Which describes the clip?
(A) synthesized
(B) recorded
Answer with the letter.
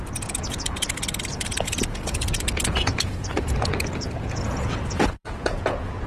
A